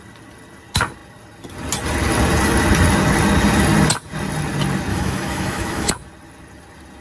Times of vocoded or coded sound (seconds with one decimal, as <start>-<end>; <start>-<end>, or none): 4.9-5.9

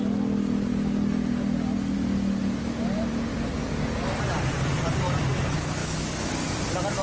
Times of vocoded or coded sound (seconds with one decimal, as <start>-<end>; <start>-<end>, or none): 5.8-6.4

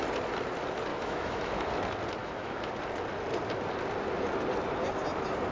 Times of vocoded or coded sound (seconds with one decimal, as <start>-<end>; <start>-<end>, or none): 0.9-1.7; 2.2-2.7

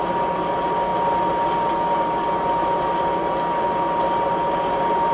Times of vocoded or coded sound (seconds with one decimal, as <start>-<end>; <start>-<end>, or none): none

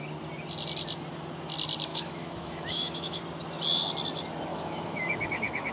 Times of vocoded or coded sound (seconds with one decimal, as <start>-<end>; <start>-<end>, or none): 1.9-3.2; 4.5-5.7